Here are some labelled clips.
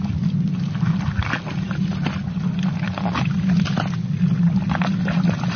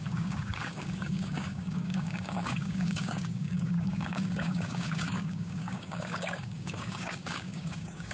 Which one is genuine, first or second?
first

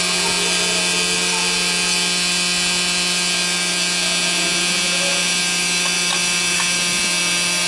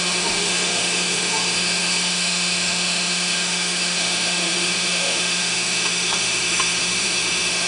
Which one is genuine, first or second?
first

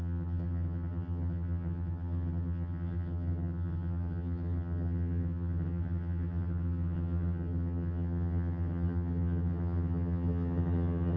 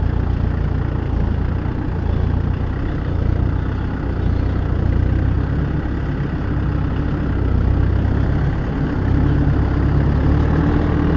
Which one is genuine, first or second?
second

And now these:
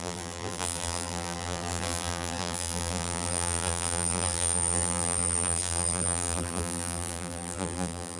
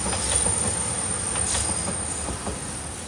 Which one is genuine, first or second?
second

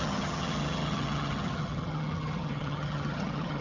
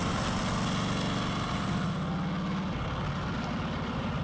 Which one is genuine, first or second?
second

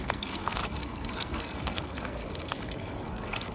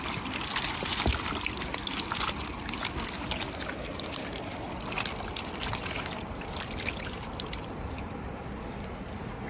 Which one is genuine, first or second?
second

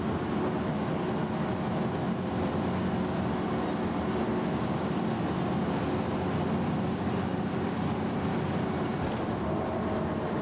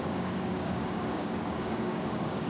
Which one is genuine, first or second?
first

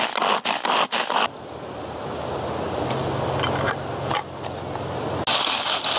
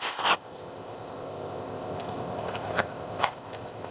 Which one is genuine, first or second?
first